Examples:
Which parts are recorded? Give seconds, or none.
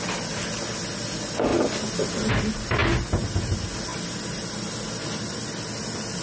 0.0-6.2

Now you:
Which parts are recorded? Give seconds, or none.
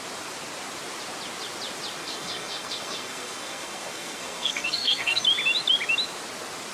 0.0-2.0; 5.2-6.7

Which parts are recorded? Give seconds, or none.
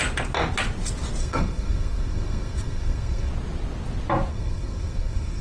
0.0-1.2; 3.3-4.3